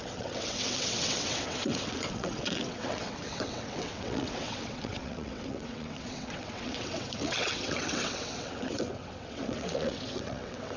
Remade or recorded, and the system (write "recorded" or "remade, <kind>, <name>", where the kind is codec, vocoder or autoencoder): remade, vocoder, WaveNeXt